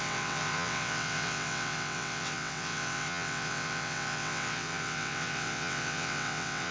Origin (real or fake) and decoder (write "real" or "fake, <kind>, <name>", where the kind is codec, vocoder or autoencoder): fake, vocoder, WaveNeXt